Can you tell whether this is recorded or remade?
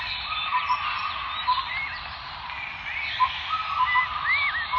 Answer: recorded